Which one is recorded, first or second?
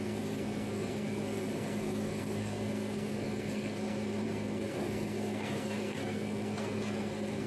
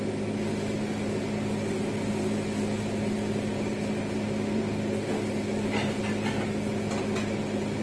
second